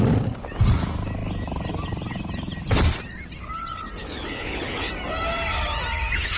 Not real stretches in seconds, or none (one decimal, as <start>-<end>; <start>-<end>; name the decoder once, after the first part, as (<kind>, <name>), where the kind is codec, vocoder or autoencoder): 4.0-4.9 (codec, HILCodec)